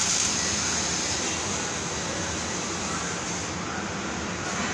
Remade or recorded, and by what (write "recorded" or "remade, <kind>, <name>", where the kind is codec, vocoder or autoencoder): recorded